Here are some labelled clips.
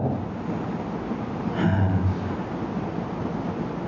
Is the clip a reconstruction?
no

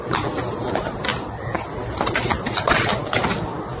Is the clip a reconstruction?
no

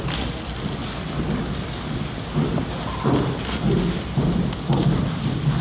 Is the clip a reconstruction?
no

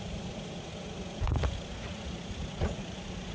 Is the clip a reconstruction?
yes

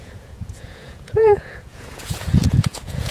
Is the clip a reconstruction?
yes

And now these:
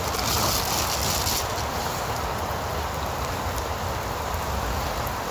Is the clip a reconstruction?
no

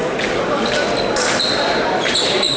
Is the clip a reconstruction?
no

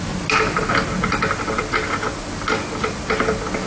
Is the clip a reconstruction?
no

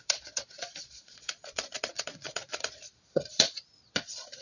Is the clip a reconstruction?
yes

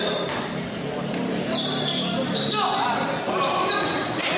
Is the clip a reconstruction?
no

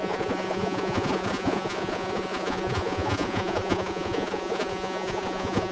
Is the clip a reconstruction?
yes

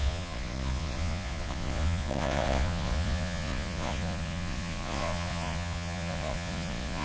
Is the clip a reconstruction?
yes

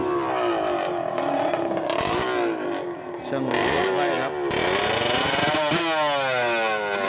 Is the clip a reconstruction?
no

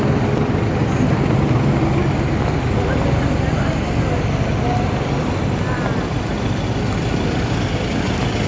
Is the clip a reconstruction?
no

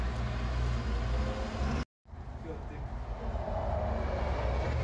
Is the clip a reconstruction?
no